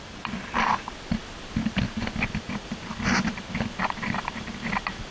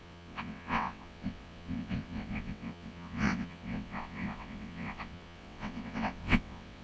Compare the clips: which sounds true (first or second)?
first